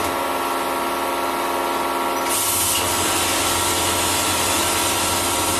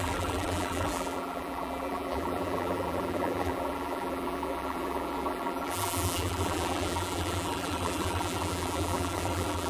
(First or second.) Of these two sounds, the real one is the first